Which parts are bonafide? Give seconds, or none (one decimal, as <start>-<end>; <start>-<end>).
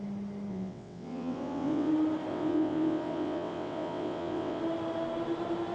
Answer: 0.0-0.5; 1.9-2.3; 4.6-5.7